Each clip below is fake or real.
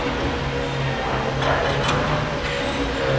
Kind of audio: real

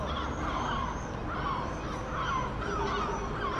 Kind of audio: real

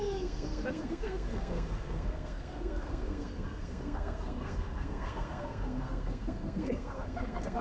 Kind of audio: fake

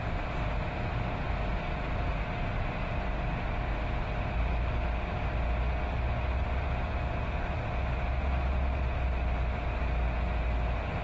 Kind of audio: real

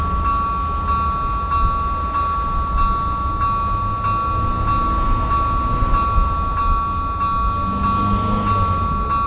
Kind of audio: real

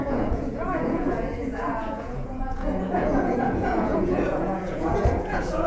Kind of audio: fake